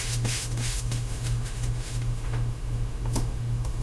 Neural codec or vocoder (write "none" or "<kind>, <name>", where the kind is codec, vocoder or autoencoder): autoencoder, DAC-VAE